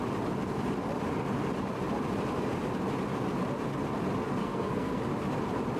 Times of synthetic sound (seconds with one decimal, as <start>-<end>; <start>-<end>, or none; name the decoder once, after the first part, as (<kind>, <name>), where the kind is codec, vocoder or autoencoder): 4.4-5.0 (codec, SNAC)